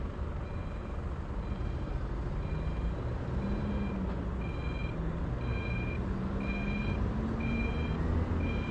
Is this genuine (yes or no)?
yes